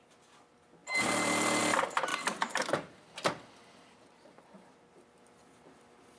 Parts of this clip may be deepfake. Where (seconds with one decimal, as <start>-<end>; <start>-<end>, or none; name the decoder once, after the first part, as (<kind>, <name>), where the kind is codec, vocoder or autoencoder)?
none

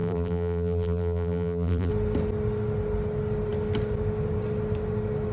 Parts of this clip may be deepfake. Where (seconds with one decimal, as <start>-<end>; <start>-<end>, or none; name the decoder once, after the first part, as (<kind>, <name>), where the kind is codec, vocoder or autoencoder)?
0.0-1.9 (vocoder, BigVGAN v2)

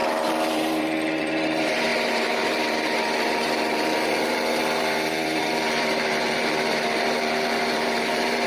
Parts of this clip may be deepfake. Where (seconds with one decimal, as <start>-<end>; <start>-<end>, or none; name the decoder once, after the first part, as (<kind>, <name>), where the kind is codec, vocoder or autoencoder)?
0.0-8.5 (vocoder, BigVGAN v2)

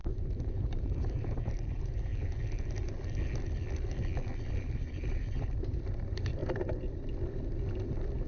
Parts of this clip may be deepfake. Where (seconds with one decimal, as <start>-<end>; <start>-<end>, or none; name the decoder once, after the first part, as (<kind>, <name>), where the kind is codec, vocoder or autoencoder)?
0.0-2.1 (vocoder, BigVGAN v2); 4.6-6.4

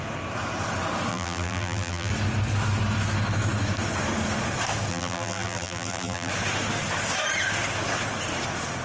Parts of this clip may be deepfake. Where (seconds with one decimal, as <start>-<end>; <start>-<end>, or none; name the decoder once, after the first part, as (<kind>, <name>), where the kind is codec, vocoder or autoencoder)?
1.1-2.1 (vocoder, BigVGAN v2); 4.9-6.3